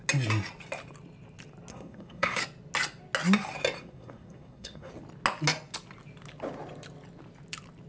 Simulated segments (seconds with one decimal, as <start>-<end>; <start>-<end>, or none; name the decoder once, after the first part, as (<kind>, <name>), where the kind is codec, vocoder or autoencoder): 1.7-2.4 (codec, SNAC); 3.8-4.9